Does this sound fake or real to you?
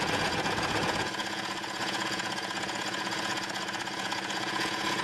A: fake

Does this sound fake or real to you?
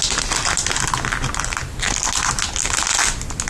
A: real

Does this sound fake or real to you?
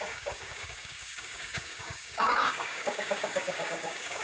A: fake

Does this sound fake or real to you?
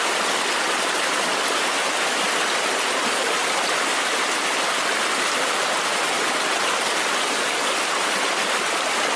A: real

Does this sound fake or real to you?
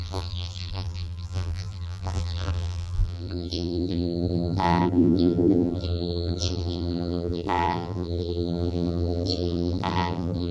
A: fake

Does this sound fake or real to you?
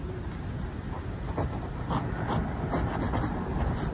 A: real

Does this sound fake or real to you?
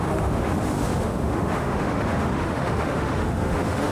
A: fake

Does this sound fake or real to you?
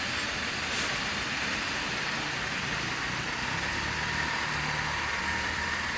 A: real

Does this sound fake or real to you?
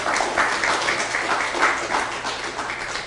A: real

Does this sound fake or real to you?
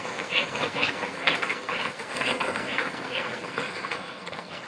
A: fake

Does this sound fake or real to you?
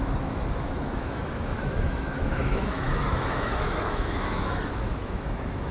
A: fake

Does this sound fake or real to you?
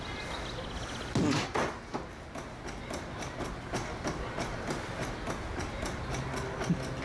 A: real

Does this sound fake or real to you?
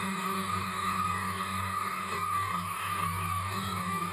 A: fake